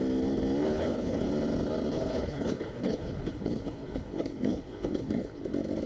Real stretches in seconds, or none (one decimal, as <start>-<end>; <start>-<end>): 0.0-0.6; 1.3-1.9; 5.4-5.9